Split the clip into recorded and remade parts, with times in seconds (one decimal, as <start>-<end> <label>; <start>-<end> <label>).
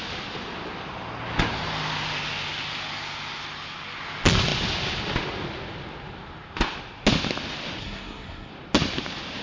0.0-7.8 recorded; 7.8-8.5 remade; 8.5-9.4 recorded